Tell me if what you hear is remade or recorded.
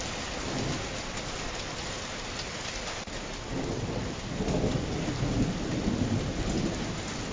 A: recorded